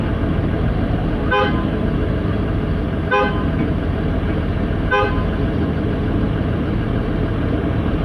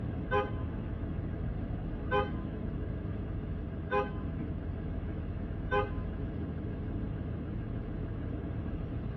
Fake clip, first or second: second